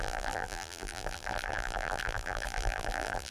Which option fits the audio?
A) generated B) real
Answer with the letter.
A